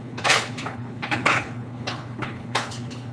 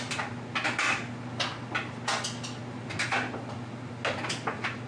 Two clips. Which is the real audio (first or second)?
second